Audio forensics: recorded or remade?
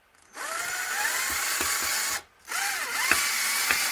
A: remade